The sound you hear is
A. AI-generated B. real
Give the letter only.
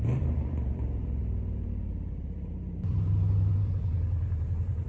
A